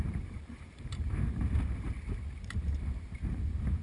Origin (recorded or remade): remade